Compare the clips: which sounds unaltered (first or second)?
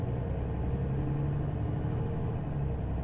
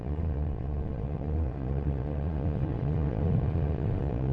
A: first